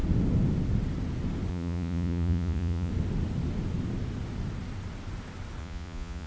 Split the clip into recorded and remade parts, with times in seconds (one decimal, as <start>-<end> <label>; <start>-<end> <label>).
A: 0.0-1.5 recorded; 1.5-2.9 remade; 2.9-5.6 recorded; 5.6-6.3 remade